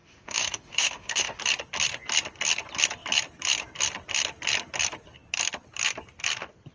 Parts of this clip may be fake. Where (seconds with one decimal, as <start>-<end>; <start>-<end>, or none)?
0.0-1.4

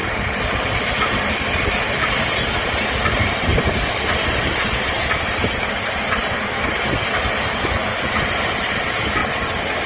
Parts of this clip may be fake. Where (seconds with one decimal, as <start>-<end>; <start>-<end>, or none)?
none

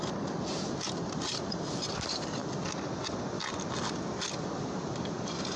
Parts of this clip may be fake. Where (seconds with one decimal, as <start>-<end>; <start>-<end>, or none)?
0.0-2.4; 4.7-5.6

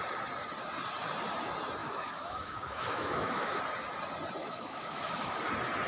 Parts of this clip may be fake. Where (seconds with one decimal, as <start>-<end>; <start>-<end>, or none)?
1.8-3.6; 4.4-5.4

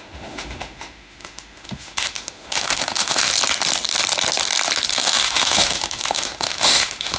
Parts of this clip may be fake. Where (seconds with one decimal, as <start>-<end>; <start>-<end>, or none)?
0.0-3.3; 4.9-7.2

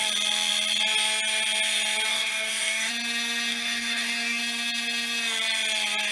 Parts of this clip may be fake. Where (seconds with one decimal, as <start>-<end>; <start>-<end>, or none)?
2.1-2.9; 3.5-4.4

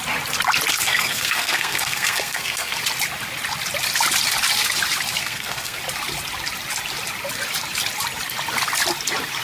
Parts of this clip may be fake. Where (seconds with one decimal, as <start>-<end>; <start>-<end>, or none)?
0.7-2.8; 5.2-5.8